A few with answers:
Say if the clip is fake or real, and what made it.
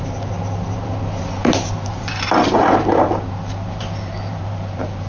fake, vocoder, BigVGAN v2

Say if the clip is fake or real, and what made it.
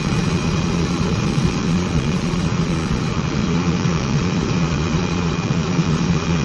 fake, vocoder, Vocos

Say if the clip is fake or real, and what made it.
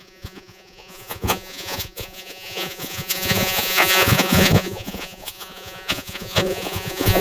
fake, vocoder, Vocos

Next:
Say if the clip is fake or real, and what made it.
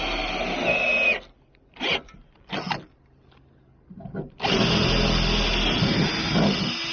real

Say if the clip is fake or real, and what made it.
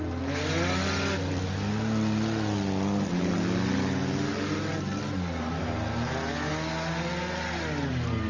real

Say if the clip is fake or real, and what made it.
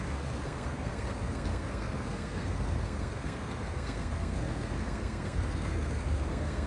fake, codec, SNAC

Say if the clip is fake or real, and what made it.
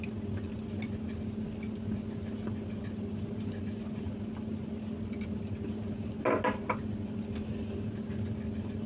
real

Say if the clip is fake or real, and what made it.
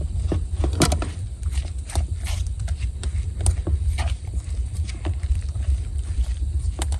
fake, vocoder, BigVGAN v2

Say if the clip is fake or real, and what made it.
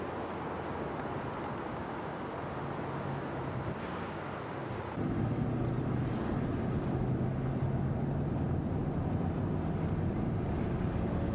real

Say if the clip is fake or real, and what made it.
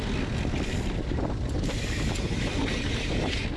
real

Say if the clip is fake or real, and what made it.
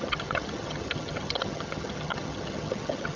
fake, vocoder, HiFi-GAN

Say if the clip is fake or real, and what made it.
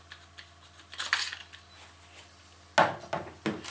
real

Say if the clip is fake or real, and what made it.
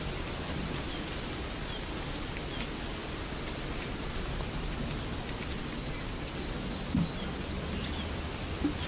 real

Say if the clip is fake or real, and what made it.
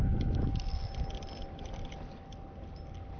real